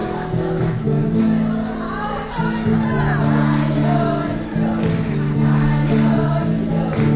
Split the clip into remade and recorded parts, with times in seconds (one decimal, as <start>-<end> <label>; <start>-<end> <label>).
0.0-1.2 remade; 1.2-7.2 recorded